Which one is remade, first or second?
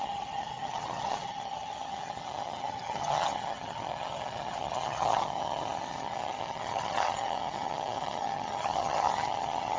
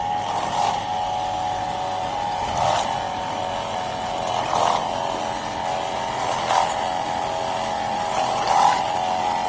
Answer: first